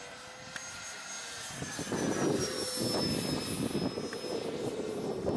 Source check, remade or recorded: recorded